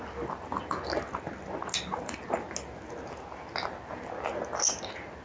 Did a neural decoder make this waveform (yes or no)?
no